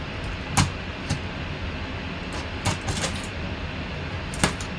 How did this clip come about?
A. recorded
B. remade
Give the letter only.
A